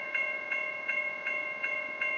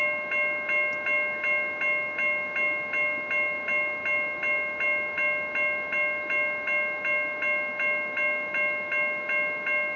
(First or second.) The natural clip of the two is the second